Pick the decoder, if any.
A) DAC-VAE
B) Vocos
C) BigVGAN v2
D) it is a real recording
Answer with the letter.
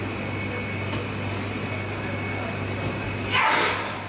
D